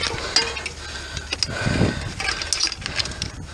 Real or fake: real